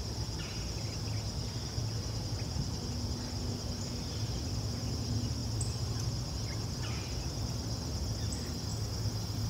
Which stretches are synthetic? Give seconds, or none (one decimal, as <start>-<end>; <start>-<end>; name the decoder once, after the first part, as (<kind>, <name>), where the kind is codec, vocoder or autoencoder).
none